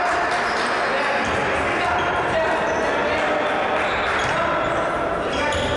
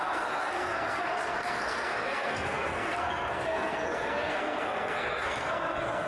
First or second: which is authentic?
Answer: first